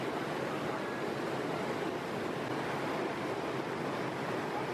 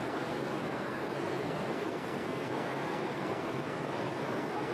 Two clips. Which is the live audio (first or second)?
first